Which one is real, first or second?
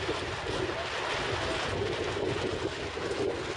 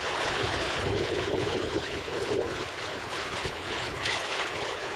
first